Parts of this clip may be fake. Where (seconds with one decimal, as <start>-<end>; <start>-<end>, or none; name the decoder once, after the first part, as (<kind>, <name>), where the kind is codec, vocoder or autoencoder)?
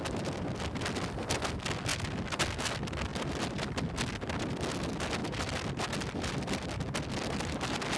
3.1-3.8 (vocoder, BigVGAN v2); 5.2-6.5